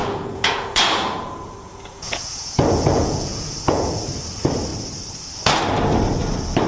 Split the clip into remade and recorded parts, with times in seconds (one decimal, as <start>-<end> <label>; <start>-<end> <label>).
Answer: 0.0-4.0 remade; 4.0-6.7 recorded